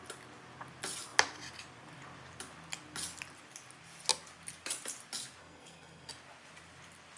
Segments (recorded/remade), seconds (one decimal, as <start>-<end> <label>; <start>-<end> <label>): 0.0-5.4 recorded; 5.4-6.1 remade; 6.1-7.2 recorded